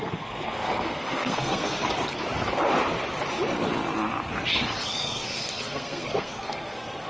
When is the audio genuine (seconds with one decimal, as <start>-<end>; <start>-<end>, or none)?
1.8-4.8